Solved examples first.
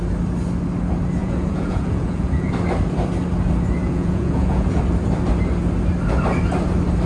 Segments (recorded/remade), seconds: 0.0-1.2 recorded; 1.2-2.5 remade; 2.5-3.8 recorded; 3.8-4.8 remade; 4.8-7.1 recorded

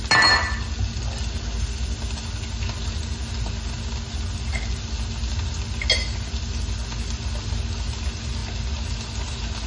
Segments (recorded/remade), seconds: 0.0-9.7 recorded